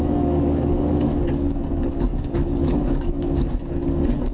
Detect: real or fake fake